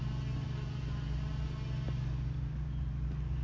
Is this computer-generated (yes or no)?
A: no